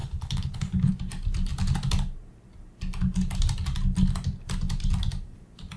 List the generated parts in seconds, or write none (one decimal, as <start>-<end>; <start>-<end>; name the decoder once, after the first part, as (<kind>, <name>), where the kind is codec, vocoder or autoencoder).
0.0-0.9 (codec, HILCodec)